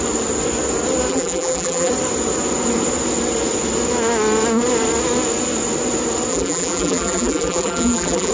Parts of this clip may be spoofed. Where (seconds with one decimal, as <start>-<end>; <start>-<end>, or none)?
1.1-1.9; 6.3-8.3